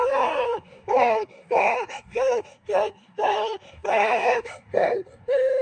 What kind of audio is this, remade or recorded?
remade